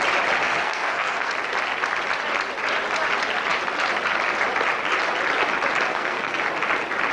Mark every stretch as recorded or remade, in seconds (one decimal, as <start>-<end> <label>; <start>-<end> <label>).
0.0-0.4 recorded; 0.4-1.3 remade; 1.3-5.9 recorded; 5.9-6.4 remade; 6.4-7.1 recorded